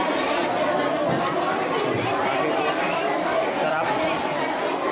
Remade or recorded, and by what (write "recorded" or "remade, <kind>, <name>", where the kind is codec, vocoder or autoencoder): recorded